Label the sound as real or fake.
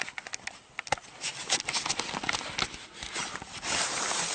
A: real